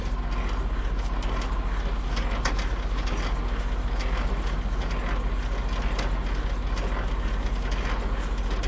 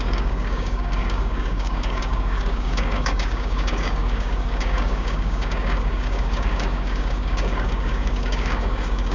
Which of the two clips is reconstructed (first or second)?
second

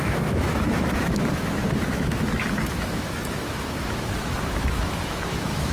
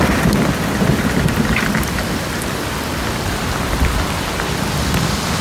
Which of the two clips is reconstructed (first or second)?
first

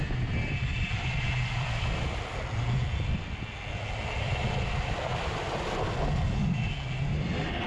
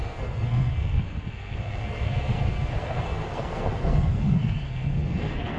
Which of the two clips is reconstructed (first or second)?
second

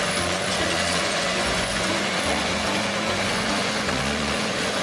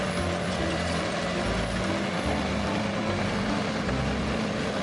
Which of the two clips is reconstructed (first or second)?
first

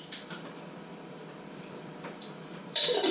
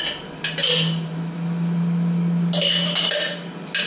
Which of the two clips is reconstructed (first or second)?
first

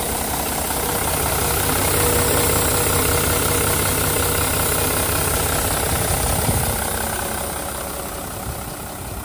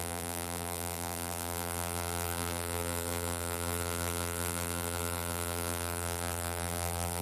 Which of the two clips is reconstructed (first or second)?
second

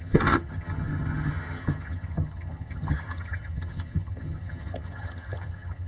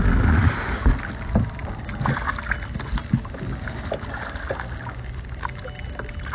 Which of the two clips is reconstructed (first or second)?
first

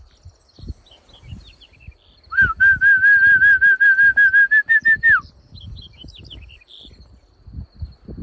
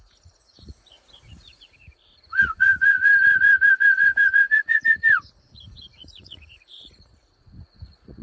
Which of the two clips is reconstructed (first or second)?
second